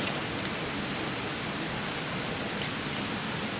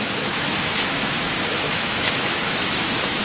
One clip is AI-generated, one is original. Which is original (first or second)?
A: first